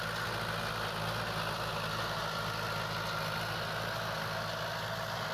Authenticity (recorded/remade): recorded